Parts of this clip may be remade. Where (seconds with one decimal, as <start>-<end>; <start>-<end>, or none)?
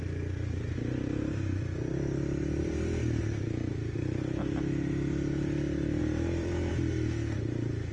2.6-3.2; 6.0-6.7